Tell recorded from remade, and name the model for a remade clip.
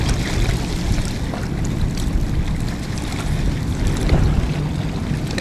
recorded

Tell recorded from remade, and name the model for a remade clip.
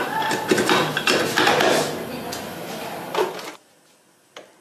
recorded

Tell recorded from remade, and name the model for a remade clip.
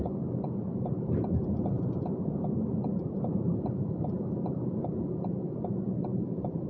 remade, vocoder, BigVGAN v2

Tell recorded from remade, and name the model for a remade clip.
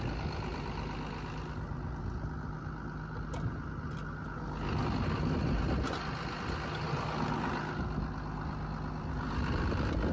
recorded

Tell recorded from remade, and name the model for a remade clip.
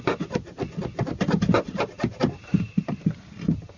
recorded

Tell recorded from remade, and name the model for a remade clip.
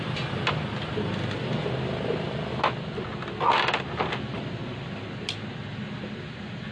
recorded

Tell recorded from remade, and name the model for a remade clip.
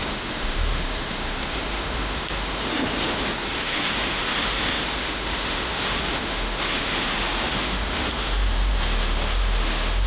remade, autoencoder, DAC-VAE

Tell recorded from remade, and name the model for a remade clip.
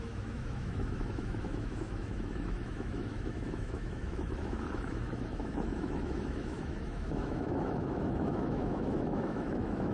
remade, autoencoder, DAC-VAE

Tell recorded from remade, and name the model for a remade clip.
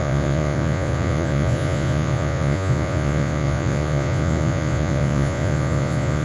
remade, vocoder, Vocos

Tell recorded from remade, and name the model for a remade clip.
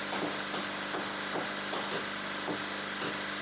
recorded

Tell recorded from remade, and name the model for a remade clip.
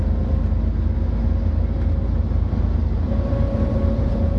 recorded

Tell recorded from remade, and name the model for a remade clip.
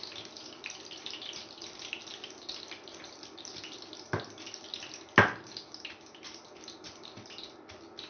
recorded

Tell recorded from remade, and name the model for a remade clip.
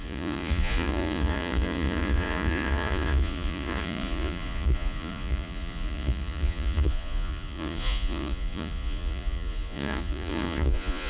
remade, vocoder, Vocos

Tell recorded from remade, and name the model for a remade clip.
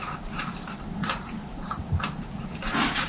remade, vocoder, BigVGAN v2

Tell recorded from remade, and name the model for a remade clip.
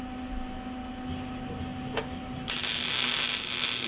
recorded